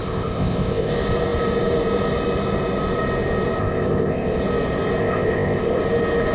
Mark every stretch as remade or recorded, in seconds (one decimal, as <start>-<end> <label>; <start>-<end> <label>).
0.0-0.9 remade; 0.9-3.6 recorded; 3.6-4.4 remade; 4.4-5.0 recorded; 5.0-5.8 remade; 5.8-6.3 recorded